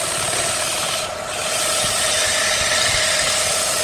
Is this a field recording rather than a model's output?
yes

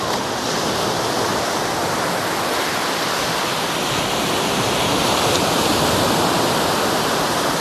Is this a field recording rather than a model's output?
yes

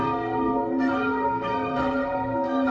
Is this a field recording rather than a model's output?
no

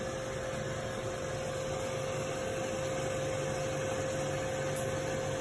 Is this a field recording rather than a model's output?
yes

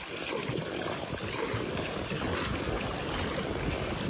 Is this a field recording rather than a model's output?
yes